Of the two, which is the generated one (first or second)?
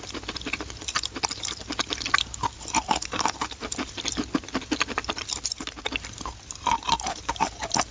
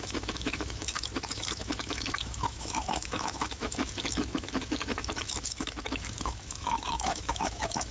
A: second